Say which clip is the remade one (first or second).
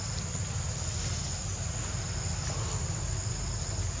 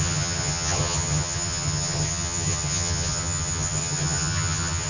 second